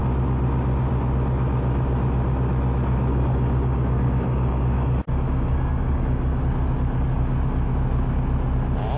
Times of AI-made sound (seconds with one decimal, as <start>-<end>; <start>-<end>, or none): 3.1-6.4